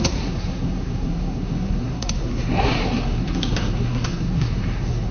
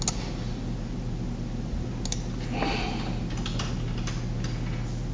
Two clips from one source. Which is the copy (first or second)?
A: first